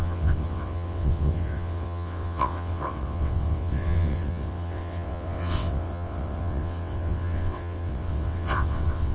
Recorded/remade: remade